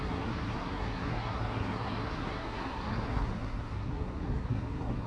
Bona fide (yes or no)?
no